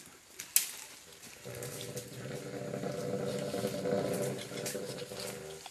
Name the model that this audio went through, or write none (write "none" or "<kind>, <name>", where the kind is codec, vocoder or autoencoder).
none